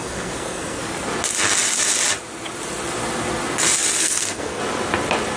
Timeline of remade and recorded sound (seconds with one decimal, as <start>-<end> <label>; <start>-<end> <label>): 0.0-0.8 remade; 0.8-4.0 recorded; 4.0-4.6 remade; 4.6-5.4 recorded